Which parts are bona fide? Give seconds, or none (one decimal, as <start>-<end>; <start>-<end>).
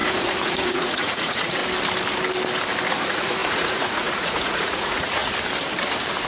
1.6-2.9; 5.2-6.3